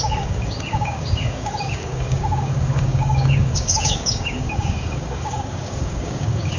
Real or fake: fake